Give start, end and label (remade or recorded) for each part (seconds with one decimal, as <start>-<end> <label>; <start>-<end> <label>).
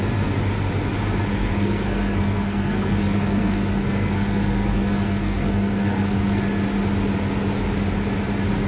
0.0-1.3 recorded; 1.3-6.4 remade; 6.4-8.7 recorded